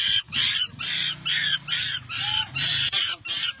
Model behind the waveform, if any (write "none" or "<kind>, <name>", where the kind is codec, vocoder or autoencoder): vocoder, BigVGAN v2